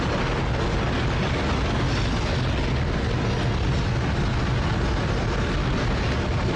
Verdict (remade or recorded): recorded